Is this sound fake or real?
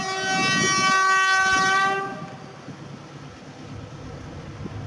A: real